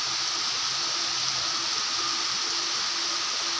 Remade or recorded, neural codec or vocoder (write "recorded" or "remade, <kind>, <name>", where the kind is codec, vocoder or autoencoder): recorded